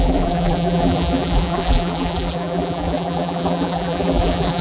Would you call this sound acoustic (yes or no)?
no